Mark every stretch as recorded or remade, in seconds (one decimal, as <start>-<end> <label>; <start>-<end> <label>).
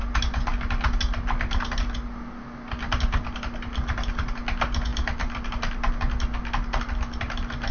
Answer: 0.0-7.7 recorded